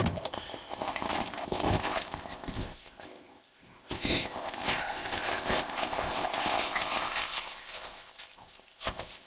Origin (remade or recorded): remade